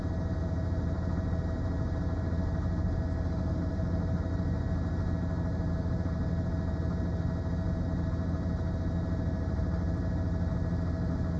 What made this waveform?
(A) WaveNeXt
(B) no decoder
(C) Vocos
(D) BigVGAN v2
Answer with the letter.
B